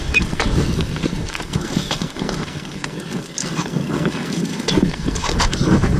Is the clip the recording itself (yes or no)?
no